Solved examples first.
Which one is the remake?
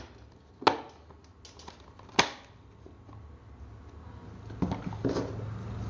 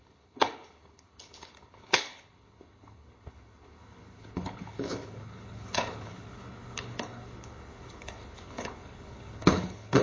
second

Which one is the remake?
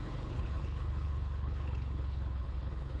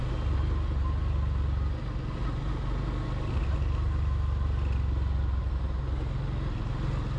first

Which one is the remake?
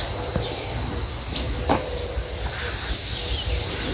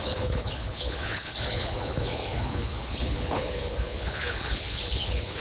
second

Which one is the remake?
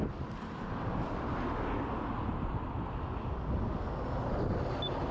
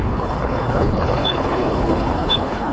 second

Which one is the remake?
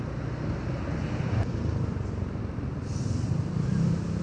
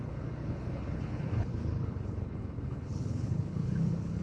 second